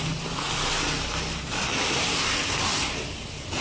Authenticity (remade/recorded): remade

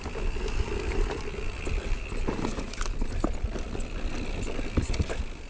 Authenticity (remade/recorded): recorded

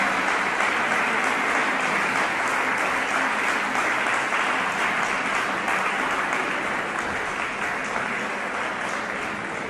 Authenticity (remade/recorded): recorded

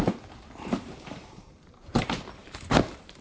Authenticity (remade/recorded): remade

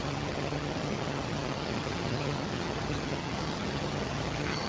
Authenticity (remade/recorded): remade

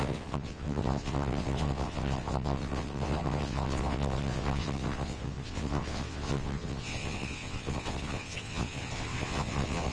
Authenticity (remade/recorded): remade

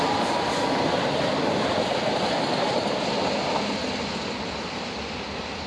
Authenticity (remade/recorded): recorded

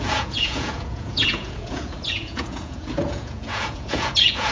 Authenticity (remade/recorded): remade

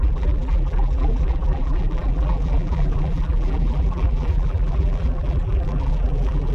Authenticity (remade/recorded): remade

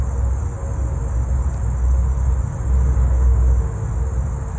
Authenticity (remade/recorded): recorded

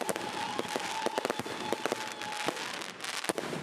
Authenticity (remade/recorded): recorded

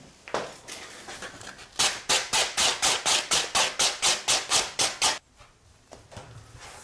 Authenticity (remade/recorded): recorded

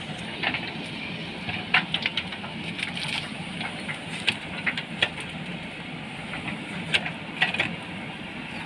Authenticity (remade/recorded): recorded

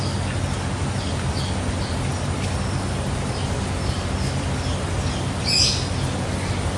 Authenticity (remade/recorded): recorded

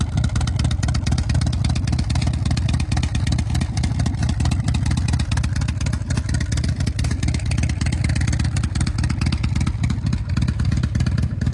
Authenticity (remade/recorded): recorded